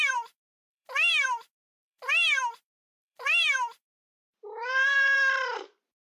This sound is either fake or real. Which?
fake